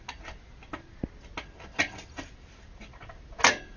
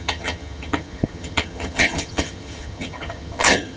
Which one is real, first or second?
first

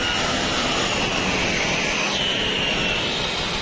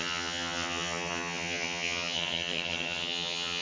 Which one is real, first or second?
first